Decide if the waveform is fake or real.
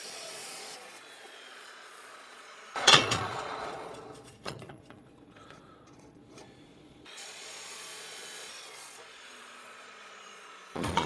fake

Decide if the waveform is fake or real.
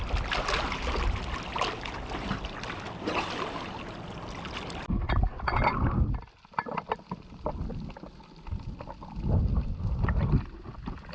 real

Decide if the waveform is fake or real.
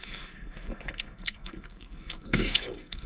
fake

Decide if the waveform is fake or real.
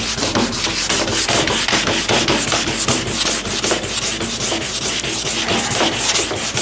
real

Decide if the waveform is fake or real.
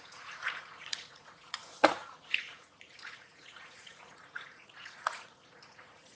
fake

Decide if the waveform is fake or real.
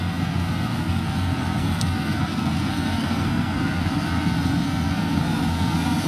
fake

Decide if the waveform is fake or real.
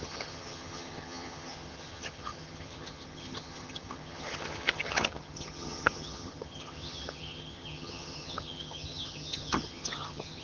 fake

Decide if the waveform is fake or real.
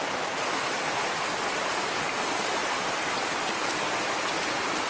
real